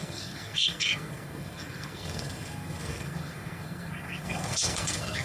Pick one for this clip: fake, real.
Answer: fake